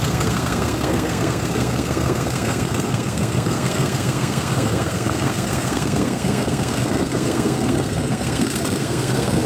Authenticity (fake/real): fake